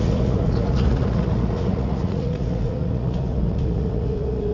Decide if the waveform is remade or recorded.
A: remade